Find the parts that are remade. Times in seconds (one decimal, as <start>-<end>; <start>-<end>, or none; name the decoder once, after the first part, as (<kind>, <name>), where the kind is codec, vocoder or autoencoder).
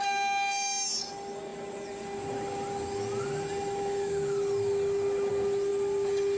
none